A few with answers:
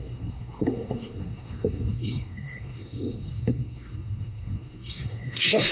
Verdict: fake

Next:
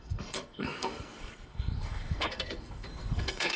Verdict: fake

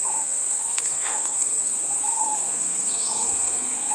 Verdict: fake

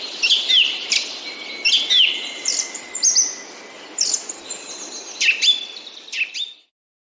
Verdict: real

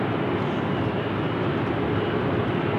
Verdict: real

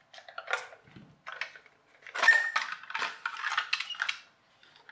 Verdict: real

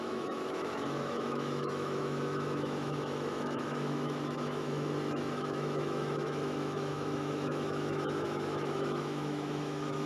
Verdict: fake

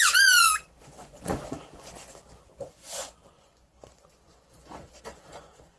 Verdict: fake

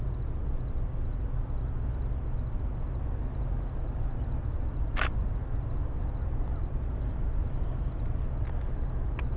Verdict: real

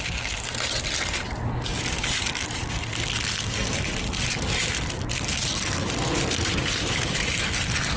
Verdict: real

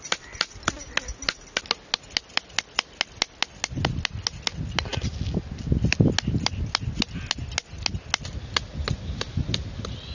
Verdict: real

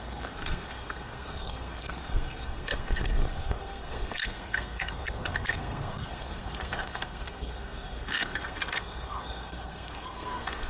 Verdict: fake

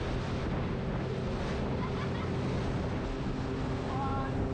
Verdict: real